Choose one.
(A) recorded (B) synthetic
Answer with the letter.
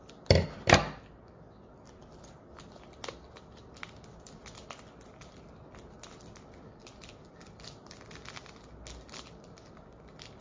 A